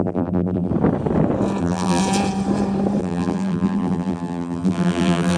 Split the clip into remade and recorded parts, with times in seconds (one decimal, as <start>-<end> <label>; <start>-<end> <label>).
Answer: 0.0-0.7 remade; 0.7-1.6 recorded; 1.6-2.0 remade; 2.0-3.0 recorded; 3.0-5.4 remade

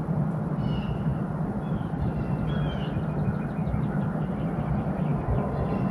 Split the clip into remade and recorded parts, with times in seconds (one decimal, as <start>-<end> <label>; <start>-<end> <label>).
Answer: 0.0-1.1 recorded; 1.1-2.1 remade; 2.1-3.6 recorded; 3.6-4.3 remade; 4.3-5.1 recorded; 5.1-5.9 remade

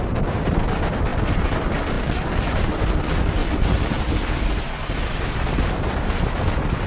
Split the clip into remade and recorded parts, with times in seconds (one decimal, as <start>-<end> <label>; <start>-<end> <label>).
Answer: 0.0-3.4 recorded; 3.4-4.0 remade; 4.0-6.9 recorded

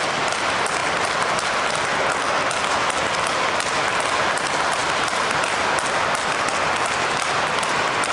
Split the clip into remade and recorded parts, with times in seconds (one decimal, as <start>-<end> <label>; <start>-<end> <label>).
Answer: 0.0-4.8 recorded; 4.8-6.3 remade; 6.3-8.1 recorded